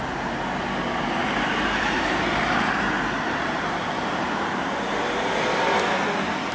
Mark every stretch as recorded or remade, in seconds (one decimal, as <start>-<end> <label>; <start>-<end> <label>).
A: 0.0-0.8 recorded; 0.8-4.7 remade; 4.7-6.5 recorded